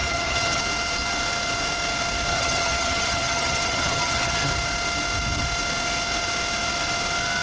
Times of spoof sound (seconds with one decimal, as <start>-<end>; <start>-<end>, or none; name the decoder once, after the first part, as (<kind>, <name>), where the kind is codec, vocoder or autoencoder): 0.0-0.6 (vocoder, HiFi-GAN); 2.3-4.5